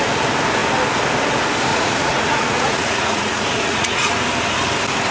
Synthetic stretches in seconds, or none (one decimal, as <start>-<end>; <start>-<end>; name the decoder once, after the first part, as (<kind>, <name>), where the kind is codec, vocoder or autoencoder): 1.7-4.1 (vocoder, Vocos)